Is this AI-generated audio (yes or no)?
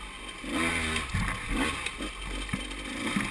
no